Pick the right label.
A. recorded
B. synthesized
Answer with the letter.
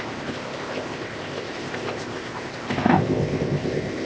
B